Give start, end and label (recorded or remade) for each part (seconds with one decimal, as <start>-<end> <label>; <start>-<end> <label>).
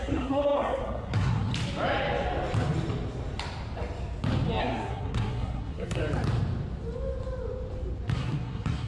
0.0-1.5 remade; 1.5-4.6 recorded; 4.6-6.0 remade; 6.0-8.1 recorded; 8.1-8.9 remade